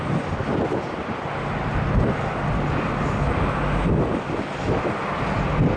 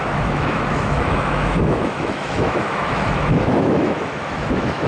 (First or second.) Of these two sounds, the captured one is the first